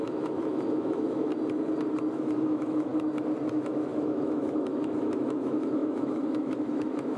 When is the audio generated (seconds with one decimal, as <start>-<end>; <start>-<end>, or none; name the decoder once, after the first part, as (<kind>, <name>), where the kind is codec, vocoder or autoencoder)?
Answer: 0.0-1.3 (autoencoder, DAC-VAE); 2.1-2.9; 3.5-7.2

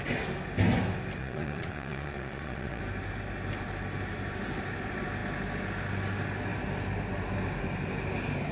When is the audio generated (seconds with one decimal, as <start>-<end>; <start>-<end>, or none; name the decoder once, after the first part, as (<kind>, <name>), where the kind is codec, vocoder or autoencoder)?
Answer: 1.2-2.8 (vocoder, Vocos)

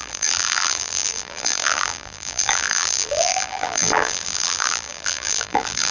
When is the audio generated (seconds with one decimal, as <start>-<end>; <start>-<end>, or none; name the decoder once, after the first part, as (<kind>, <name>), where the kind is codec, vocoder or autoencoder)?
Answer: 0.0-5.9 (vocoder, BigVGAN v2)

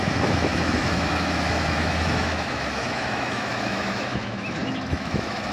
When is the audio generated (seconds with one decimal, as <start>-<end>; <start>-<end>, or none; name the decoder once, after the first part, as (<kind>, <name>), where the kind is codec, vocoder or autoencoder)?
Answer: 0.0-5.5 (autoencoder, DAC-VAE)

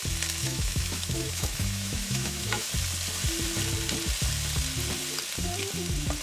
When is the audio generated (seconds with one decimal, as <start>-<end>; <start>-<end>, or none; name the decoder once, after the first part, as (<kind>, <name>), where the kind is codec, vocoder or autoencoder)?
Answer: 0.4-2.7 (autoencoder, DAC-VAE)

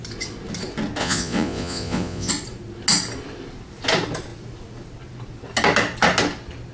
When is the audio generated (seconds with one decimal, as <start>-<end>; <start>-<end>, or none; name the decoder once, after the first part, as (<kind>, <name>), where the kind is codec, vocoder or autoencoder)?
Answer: 1.0-2.3 (vocoder, Vocos)

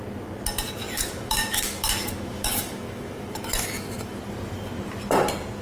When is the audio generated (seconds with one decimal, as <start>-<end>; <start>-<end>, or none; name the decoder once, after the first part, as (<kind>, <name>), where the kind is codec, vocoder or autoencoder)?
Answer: 0.8-4.2 (autoencoder, DAC-VAE)

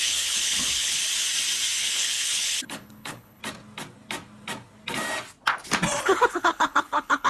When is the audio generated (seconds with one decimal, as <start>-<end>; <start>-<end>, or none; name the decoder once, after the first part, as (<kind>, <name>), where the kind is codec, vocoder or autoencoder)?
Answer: 0.0-1.0 (codec, HILCodec); 1.8-3.4; 6.0-7.3